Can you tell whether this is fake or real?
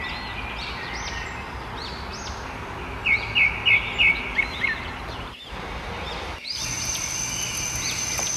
real